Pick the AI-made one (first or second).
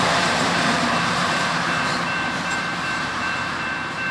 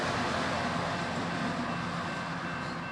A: first